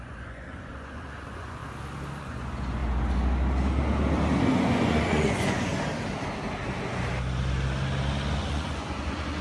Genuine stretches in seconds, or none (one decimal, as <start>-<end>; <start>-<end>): 1.6-2.2; 2.8-4.4; 5.7-8.5